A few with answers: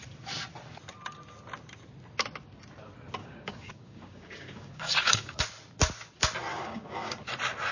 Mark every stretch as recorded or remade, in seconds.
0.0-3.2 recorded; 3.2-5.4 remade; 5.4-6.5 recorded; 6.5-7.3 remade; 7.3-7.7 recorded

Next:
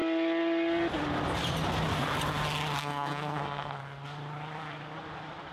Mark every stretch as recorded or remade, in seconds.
0.0-2.8 recorded; 2.8-3.8 remade; 3.8-5.5 recorded

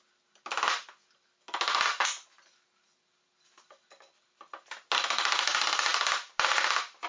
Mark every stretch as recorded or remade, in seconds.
0.0-7.1 recorded

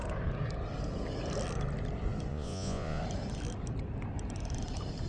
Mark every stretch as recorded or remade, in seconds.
0.0-2.3 recorded; 2.3-3.0 remade; 3.0-5.1 recorded

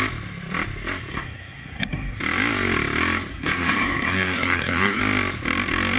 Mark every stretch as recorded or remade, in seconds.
0.0-1.1 recorded; 1.1-2.2 remade; 2.2-3.3 recorded; 3.3-5.0 remade; 5.0-6.0 recorded